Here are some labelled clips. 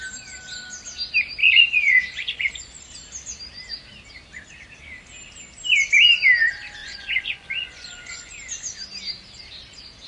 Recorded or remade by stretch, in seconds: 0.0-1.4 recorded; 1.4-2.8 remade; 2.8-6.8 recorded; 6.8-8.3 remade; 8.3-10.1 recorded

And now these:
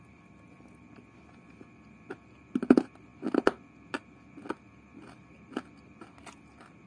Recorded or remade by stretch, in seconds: 0.0-6.9 recorded

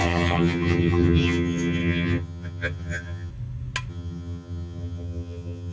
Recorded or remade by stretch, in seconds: 0.0-3.3 remade; 3.3-3.9 recorded; 3.9-5.7 remade